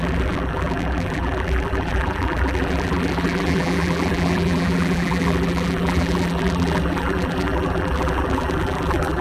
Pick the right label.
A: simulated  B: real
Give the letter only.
A